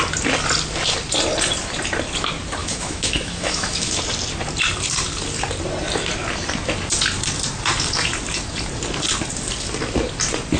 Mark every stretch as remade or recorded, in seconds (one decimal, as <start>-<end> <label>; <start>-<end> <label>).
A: 0.0-2.6 recorded; 2.6-4.0 remade; 4.0-10.6 recorded